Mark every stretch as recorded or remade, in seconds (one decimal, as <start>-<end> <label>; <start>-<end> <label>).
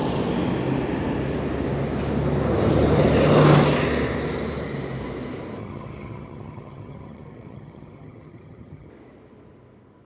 0.0-5.6 recorded; 5.6-8.9 remade; 8.9-10.0 recorded